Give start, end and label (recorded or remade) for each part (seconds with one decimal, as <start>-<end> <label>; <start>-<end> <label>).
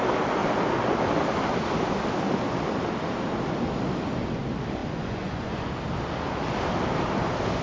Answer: 0.0-4.8 recorded; 4.8-5.7 remade; 5.7-7.6 recorded